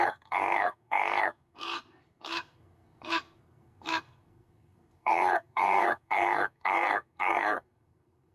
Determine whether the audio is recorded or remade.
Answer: remade